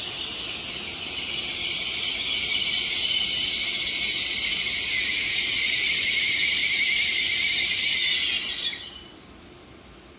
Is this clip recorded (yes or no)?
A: yes